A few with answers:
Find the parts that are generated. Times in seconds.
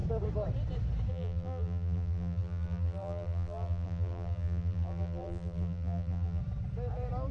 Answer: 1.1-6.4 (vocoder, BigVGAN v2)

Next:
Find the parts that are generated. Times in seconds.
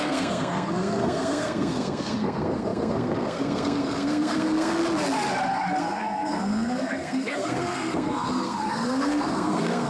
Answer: 0.0-4.8 (codec, SNAC); 5.8-9.9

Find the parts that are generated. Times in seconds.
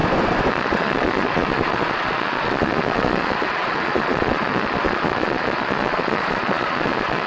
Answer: 0.5-7.3 (vocoder, Vocos)